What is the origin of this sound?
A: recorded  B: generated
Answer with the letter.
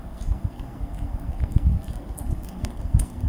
B